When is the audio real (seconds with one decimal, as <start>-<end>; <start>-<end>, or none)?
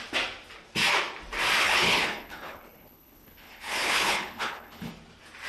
0.0-1.6; 4.9-5.5